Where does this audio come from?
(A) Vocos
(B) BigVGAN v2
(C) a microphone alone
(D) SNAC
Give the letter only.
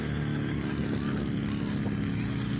C